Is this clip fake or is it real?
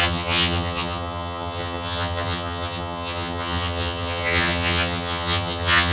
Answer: fake